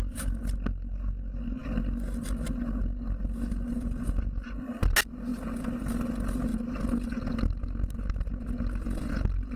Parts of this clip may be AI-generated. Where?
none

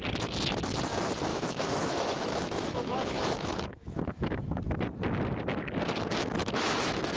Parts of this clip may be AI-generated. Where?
1.3-4.6 (autoencoder, DAC-VAE); 6.4-7.2

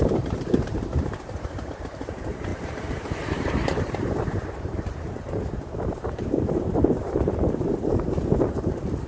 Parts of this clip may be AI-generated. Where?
0.0-9.1 (vocoder, BigVGAN v2)